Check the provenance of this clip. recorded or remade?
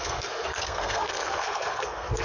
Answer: remade